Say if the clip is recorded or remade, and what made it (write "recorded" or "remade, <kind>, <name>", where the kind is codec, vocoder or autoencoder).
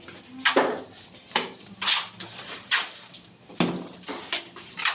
recorded